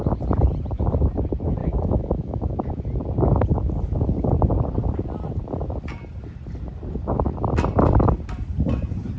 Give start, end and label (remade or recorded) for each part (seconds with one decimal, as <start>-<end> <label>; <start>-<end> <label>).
0.0-1.6 recorded; 1.6-2.5 remade; 2.5-9.2 recorded